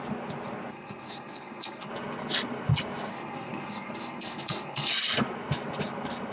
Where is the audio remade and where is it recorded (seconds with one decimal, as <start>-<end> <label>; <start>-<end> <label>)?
0.0-0.7 recorded; 0.7-1.9 remade; 1.9-3.1 recorded; 3.1-4.9 remade; 4.9-6.3 recorded